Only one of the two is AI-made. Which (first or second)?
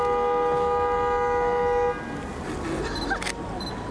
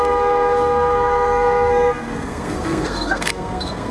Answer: second